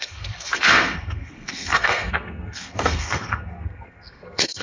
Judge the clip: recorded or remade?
remade